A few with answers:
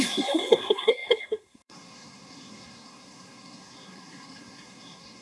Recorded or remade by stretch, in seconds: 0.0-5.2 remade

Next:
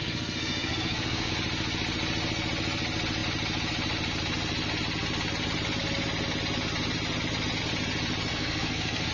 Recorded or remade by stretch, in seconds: 0.0-1.3 remade; 1.3-8.3 recorded; 8.3-9.1 remade

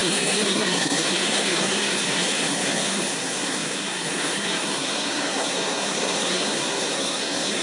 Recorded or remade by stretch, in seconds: 0.0-7.6 remade

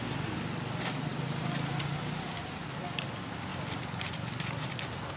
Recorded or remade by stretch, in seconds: 0.0-5.2 recorded

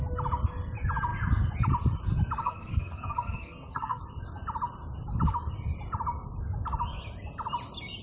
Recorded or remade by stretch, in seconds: 0.0-2.4 recorded; 2.4-4.0 remade; 4.0-8.0 recorded